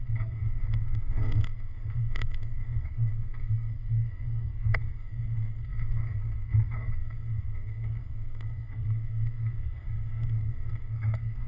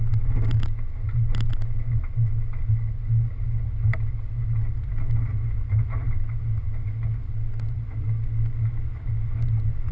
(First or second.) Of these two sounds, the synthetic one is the first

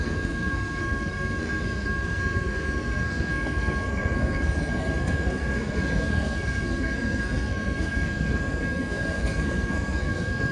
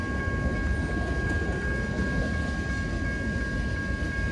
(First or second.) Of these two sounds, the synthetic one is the first